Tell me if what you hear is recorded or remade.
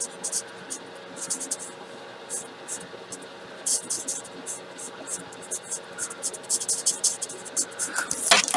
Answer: recorded